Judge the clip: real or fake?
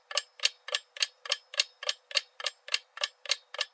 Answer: real